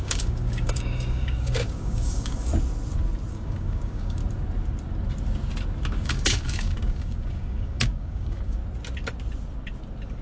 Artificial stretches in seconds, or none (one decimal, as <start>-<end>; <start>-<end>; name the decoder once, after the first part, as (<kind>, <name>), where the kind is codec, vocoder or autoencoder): 0.0-2.5 (codec, DAC); 3.3-4.2; 5.9-8.6